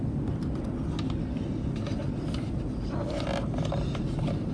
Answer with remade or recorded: recorded